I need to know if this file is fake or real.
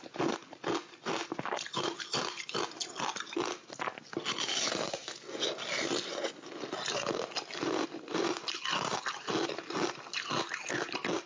real